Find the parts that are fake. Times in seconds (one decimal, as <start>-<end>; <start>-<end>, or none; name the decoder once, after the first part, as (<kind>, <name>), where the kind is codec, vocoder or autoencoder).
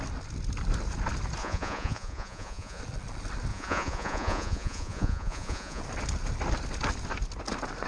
1.4-2.8 (vocoder, Vocos); 3.5-5.8